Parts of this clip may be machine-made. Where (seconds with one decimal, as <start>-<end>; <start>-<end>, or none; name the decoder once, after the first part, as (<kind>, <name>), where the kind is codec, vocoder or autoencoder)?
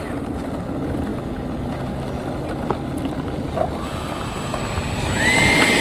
none